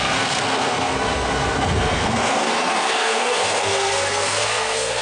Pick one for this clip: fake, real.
fake